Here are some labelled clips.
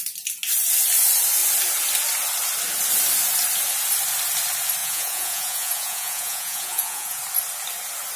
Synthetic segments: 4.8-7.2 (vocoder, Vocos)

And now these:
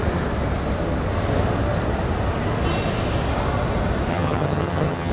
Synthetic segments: 4.1-5.1 (vocoder, HiFi-GAN)

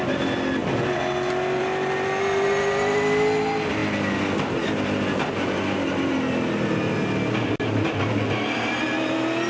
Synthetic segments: none

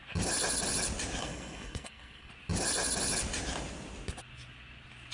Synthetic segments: 1.2-2.3 (codec, SNAC)

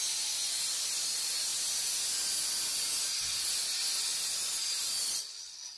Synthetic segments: none

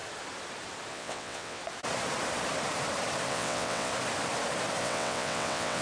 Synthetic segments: 0.9-1.6 (vocoder, WaveNeXt); 3.3-3.9; 4.8-5.8

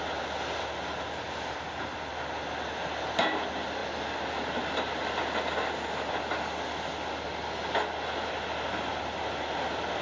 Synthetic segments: none